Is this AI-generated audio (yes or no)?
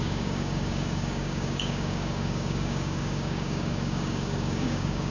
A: yes